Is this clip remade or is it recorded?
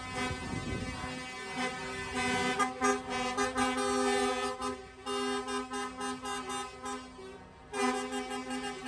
recorded